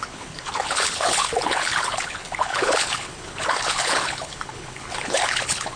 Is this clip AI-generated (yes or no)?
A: yes